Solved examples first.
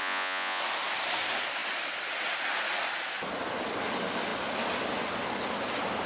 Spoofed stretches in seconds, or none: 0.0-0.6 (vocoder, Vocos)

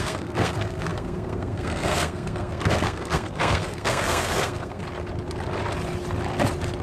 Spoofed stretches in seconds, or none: 0.0-4.8 (codec, SNAC)

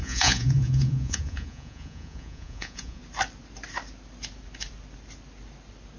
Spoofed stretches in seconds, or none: 0.0-3.0 (vocoder, Vocos)